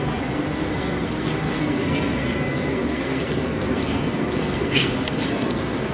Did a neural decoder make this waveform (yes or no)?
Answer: yes